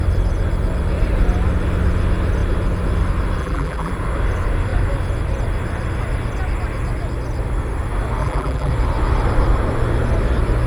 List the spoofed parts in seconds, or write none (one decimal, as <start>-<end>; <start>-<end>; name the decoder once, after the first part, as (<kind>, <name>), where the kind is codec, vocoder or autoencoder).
3.4-3.9 (vocoder, BigVGAN v2); 8.2-8.7